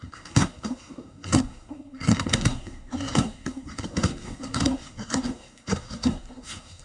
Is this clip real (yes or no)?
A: no